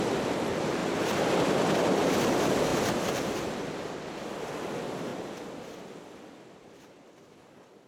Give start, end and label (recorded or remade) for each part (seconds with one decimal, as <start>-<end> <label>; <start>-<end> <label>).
0.0-7.9 recorded